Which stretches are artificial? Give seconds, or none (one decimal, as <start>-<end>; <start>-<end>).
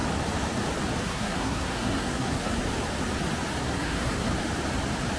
1.0-2.6; 3.6-4.3